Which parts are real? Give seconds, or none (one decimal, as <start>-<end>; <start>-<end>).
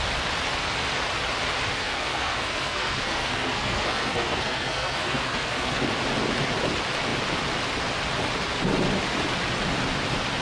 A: 0.0-1.7; 5.8-10.4